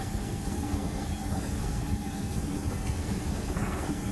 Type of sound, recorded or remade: remade